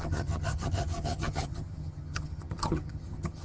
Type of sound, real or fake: fake